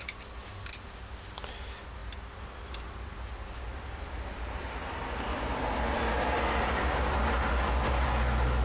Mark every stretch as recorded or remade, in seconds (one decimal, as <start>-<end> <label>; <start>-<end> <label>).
0.0-8.6 recorded